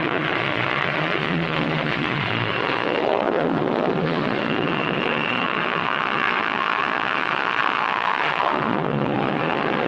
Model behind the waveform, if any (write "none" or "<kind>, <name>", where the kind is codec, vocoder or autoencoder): vocoder, Vocos